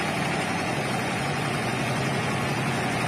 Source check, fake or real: fake